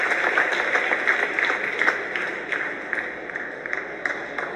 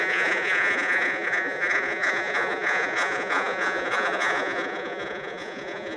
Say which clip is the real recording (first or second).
first